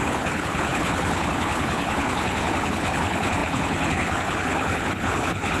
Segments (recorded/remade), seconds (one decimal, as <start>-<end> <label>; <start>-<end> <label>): 0.0-5.6 remade